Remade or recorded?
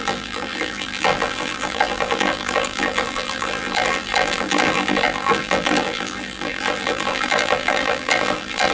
remade